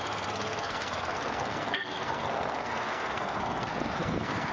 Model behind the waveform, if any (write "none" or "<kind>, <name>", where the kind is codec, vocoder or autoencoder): codec, SNAC